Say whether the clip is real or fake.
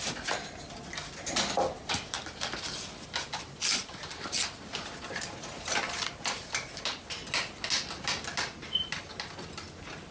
real